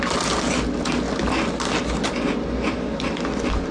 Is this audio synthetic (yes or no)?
no